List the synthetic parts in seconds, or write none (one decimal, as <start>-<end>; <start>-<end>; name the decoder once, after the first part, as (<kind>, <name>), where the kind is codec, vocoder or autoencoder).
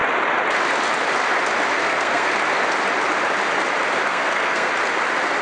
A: 1.8-2.3 (codec, SNAC); 4.1-4.7